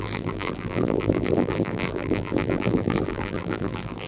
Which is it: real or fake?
fake